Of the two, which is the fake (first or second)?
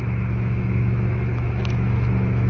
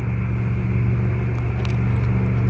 first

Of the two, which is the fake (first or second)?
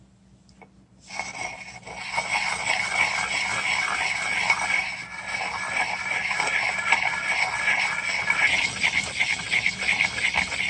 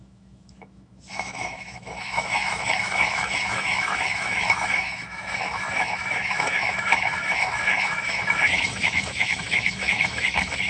second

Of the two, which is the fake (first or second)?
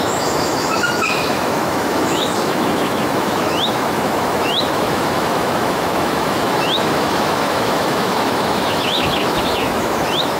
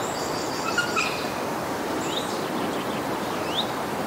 first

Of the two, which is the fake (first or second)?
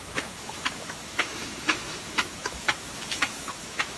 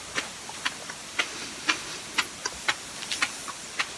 first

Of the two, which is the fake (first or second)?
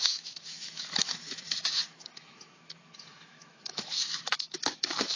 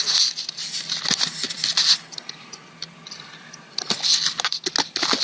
first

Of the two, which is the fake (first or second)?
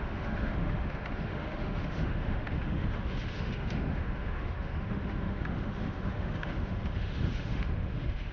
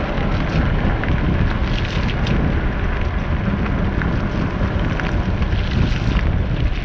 first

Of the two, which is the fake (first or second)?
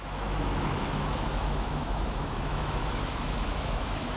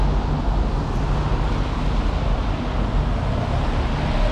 first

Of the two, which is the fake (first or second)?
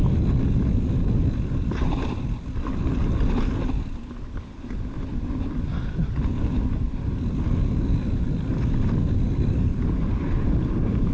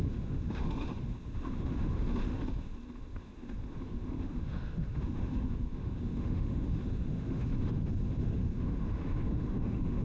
second